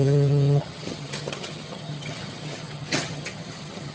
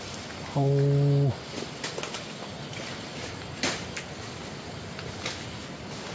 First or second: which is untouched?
second